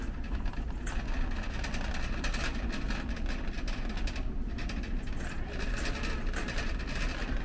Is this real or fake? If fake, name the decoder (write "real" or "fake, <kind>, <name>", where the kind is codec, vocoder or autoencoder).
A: real